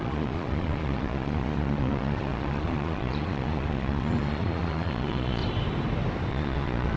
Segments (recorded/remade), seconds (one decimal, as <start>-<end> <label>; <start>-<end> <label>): 0.0-5.4 remade; 5.4-6.3 recorded; 6.3-7.0 remade